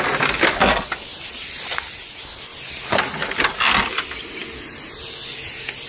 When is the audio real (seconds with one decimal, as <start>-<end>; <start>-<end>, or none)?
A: 0.0-1.1; 2.1-2.5; 3.4-5.9